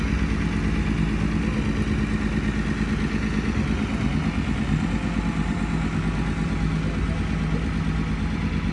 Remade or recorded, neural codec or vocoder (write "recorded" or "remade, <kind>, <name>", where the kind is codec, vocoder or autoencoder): recorded